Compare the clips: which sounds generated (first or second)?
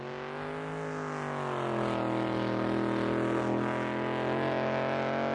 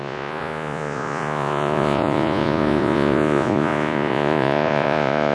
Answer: second